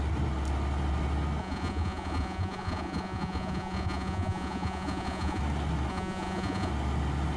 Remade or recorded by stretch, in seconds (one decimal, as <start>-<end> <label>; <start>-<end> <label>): 0.0-1.4 recorded; 1.4-5.4 remade; 5.4-5.9 recorded; 5.9-6.7 remade; 6.7-7.4 recorded